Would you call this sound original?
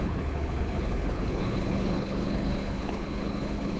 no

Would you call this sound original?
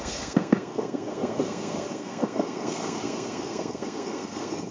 no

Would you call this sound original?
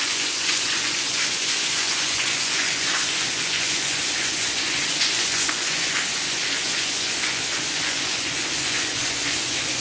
no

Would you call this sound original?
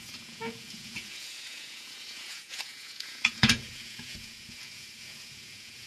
no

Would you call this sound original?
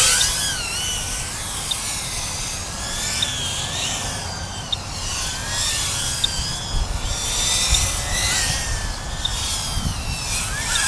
yes